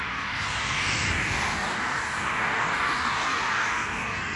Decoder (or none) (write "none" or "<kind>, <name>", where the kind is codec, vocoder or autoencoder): codec, DAC